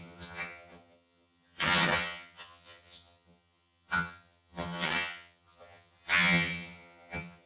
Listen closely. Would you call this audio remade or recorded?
remade